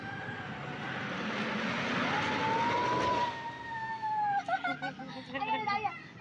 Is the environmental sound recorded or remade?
recorded